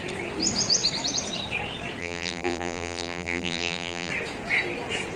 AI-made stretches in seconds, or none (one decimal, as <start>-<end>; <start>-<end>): 2.0-4.1